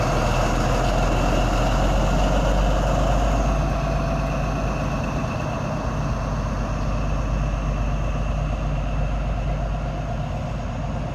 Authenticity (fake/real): real